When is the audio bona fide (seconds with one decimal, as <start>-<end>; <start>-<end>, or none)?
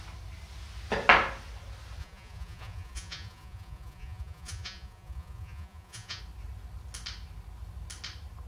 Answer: 0.0-2.0; 6.2-8.5